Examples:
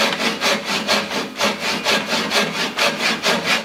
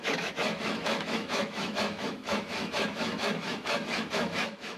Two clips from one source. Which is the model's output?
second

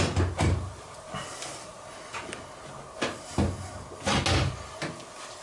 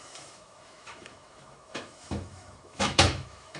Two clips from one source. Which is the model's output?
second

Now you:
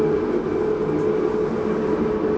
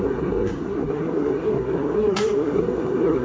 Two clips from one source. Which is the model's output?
second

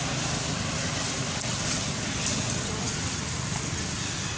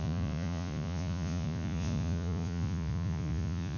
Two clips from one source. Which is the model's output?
second